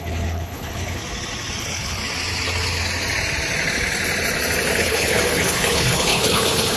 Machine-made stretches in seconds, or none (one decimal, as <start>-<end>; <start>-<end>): 0.0-1.0; 1.6-2.0; 4.8-6.8